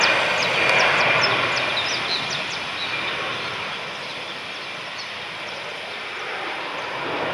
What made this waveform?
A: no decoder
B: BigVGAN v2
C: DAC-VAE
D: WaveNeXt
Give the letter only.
A